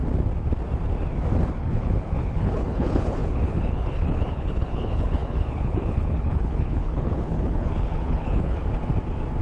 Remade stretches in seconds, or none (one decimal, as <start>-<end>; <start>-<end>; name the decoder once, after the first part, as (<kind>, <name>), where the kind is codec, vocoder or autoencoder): 1.6-8.6 (codec, HILCodec)